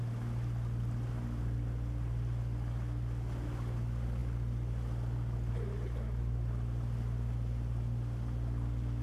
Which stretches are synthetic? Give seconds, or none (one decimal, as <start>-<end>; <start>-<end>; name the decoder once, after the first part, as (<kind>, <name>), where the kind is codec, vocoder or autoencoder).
none